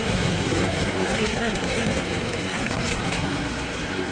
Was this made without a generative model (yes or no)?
no